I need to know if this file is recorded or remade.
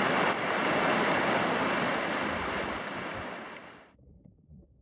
remade